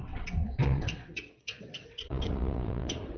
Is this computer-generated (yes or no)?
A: yes